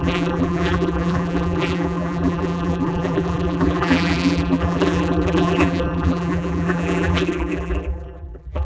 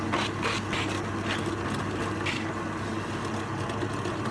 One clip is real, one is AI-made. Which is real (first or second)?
second